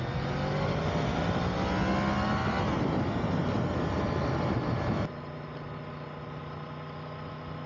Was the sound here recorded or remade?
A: recorded